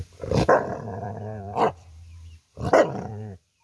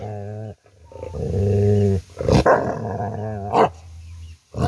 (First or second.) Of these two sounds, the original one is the second